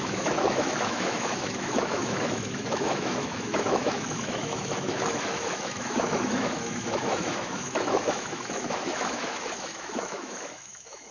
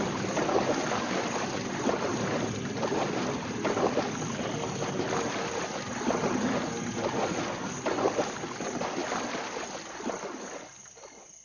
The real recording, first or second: second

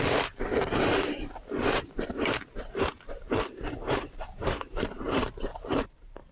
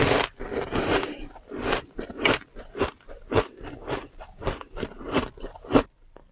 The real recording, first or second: second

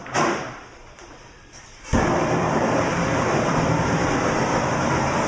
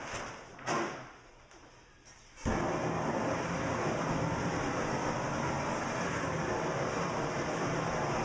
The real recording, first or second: second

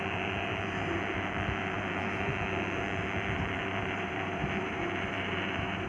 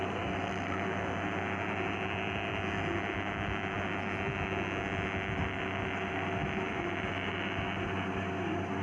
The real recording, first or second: second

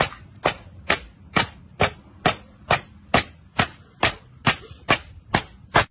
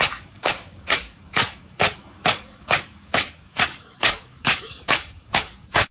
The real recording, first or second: first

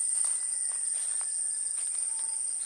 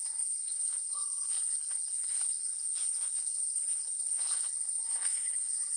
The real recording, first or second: first